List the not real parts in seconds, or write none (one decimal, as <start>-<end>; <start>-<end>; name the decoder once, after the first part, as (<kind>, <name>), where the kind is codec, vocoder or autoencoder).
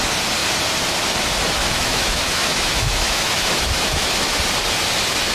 1.6-4.4 (autoencoder, DAC-VAE)